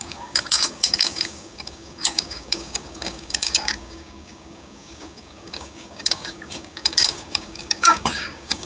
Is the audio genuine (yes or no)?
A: no